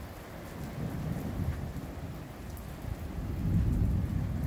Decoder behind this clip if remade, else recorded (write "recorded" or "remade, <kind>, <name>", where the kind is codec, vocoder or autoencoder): recorded